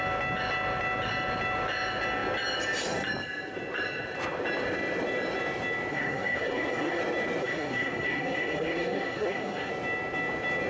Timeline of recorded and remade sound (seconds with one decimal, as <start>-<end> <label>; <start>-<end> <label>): 0.0-5.9 recorded; 5.9-7.0 remade; 7.0-7.4 recorded; 7.4-9.7 remade; 9.7-10.7 recorded